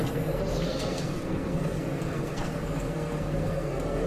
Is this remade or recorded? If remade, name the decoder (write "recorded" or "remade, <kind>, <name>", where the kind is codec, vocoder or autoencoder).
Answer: remade, codec, SNAC